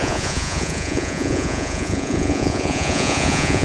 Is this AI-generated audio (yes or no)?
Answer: yes